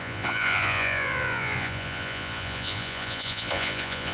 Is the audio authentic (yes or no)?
no